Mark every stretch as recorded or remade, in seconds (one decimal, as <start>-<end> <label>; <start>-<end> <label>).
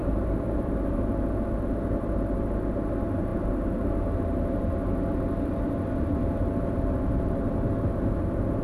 0.0-1.0 remade; 1.0-8.6 recorded